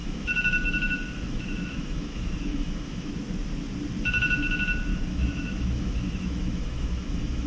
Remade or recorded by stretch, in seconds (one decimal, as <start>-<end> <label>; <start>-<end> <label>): 0.0-3.1 remade; 3.1-4.9 recorded; 4.9-7.5 remade